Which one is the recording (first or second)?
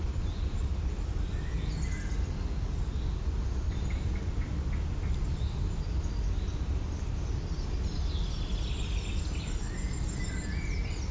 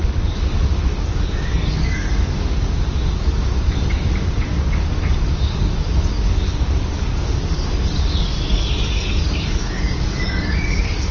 first